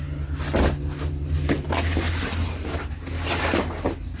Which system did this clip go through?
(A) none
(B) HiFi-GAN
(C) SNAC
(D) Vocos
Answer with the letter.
A